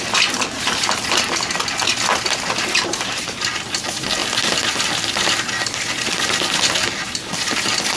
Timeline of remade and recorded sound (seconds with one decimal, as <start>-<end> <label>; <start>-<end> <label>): 0.0-8.0 recorded

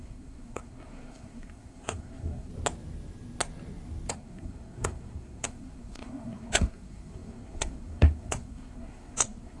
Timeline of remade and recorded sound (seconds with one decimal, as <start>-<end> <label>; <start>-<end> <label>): 0.0-2.5 remade; 2.5-4.1 recorded; 4.1-9.6 remade

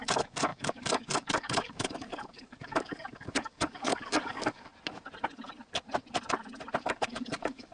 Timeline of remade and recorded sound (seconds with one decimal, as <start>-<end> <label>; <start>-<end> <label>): 0.0-4.7 remade; 4.7-6.8 recorded; 6.8-7.7 remade

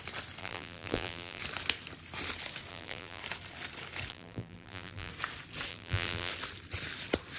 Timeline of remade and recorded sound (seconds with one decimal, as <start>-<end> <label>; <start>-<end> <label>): 0.0-0.4 recorded; 0.4-1.4 remade; 1.4-2.7 recorded; 2.7-3.2 remade; 3.2-4.1 recorded; 4.1-5.1 remade; 5.1-5.7 recorded; 5.7-6.3 remade; 6.3-7.4 recorded

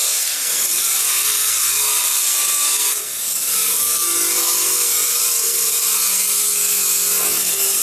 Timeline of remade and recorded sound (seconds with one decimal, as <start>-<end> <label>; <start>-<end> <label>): 0.0-7.8 remade

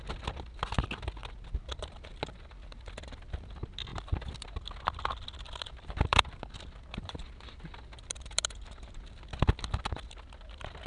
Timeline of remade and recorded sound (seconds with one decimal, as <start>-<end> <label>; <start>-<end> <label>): 0.0-1.2 recorded; 1.2-2.6 remade; 2.6-3.9 recorded; 3.9-8.8 remade; 8.8-10.9 recorded

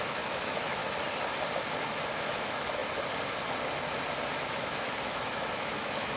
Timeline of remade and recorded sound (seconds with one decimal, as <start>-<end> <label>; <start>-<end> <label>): 0.0-0.8 remade; 0.8-1.8 recorded; 1.8-2.8 remade; 2.8-4.3 recorded; 4.3-6.2 remade

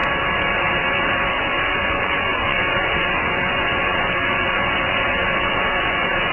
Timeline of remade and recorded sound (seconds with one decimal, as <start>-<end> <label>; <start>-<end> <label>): 0.0-1.3 recorded; 1.3-6.3 remade